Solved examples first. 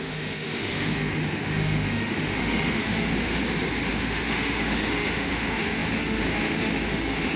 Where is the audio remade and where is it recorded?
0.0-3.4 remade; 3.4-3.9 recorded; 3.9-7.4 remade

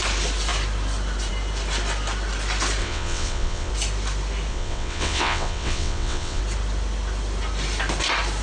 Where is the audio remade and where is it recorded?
0.0-2.8 recorded; 2.8-3.7 remade; 3.7-4.5 recorded; 4.5-6.4 remade; 6.4-8.4 recorded

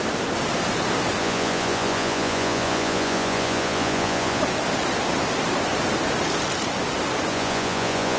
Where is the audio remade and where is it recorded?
0.0-1.2 recorded; 1.2-4.4 remade; 4.4-7.3 recorded; 7.3-8.2 remade

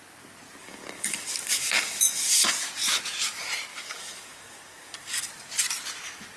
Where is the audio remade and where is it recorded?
0.0-0.6 recorded; 0.6-2.7 remade; 2.7-3.7 recorded; 3.7-5.3 remade; 5.3-6.4 recorded

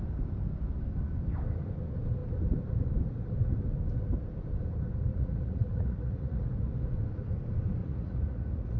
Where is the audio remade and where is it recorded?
0.0-5.1 recorded; 5.1-6.5 remade; 6.5-7.8 recorded; 7.8-8.8 remade